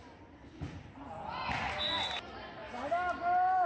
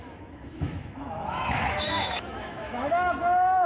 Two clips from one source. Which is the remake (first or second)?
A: second